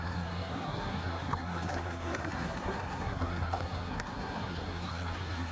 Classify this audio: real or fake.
fake